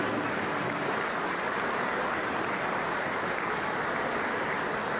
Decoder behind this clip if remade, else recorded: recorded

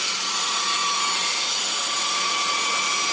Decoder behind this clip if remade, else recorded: remade, vocoder, Vocos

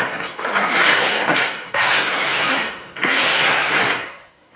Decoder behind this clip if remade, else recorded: remade, codec, SNAC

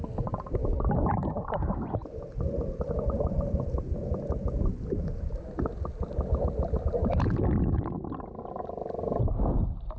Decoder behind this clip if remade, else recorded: recorded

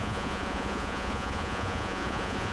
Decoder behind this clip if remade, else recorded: remade, vocoder, Vocos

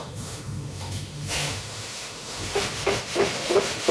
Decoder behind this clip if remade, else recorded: remade, autoencoder, DAC-VAE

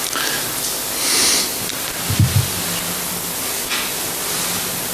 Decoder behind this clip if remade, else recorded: recorded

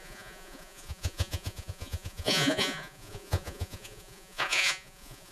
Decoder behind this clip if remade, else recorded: remade, vocoder, Vocos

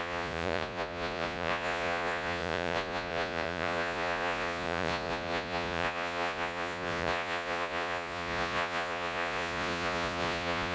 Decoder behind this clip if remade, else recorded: remade, vocoder, Vocos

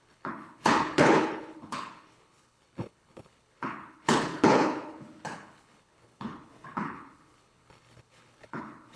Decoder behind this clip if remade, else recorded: remade, codec, HILCodec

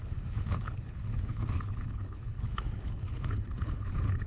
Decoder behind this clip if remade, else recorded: remade, codec, HILCodec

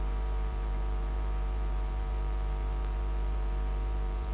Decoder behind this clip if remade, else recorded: remade, vocoder, BigVGAN v2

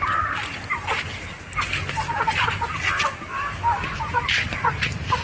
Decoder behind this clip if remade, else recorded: recorded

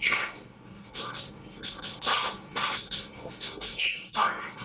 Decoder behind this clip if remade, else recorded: remade, codec, SNAC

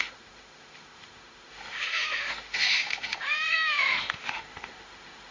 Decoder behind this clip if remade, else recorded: remade, autoencoder, DAC-VAE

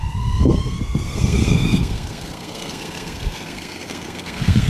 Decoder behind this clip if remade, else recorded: remade, codec, SNAC